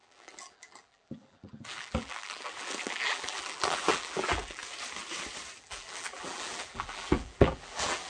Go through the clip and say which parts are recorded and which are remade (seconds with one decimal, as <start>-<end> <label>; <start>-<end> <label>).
0.0-4.6 remade; 4.6-5.6 recorded; 5.6-8.1 remade